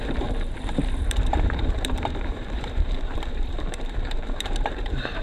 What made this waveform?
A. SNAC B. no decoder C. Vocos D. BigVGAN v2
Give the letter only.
D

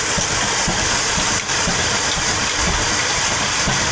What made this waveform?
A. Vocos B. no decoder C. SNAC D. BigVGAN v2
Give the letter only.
B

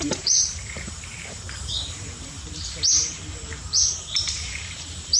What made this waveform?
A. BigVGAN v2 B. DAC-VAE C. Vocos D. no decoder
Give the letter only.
A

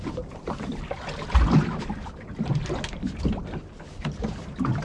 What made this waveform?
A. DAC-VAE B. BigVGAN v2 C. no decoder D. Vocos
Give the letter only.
C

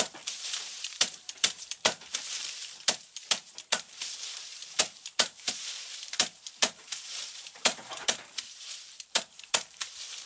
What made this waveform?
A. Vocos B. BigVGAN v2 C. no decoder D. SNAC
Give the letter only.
B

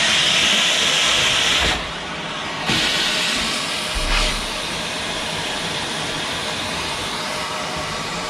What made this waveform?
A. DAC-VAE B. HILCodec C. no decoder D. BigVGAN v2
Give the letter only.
D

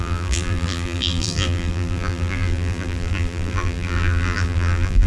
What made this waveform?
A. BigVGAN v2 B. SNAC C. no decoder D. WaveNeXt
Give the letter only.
A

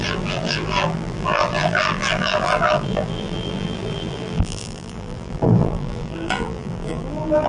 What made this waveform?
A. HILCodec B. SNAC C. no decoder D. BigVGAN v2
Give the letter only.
D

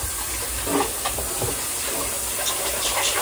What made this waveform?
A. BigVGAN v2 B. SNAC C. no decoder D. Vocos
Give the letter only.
C